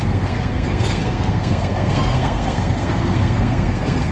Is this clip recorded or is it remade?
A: remade